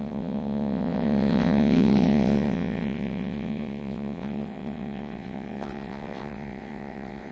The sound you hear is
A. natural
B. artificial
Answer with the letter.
B